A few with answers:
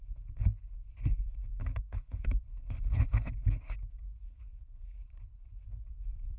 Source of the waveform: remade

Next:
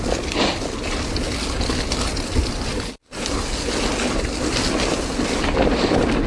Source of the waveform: recorded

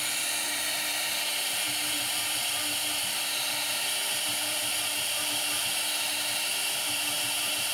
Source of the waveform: remade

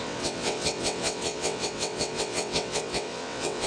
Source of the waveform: remade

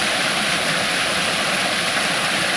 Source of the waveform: recorded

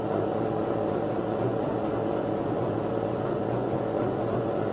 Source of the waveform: remade